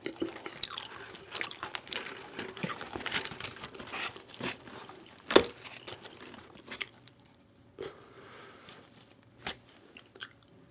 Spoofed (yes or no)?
yes